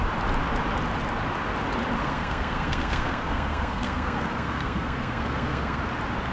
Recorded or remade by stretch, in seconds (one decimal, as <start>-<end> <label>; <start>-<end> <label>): 0.0-2.0 recorded; 2.0-5.8 remade; 5.8-6.3 recorded